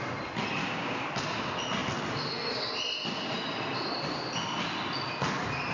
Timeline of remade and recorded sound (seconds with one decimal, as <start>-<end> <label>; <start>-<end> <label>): 0.0-0.6 recorded; 0.6-1.1 remade; 1.1-5.7 recorded